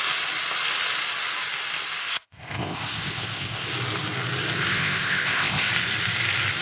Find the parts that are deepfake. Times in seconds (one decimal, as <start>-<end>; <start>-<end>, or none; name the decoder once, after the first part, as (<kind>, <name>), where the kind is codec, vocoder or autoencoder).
2.0-3.7 (codec, ZipCodec); 4.7-5.7